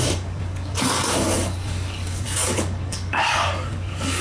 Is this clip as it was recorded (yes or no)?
no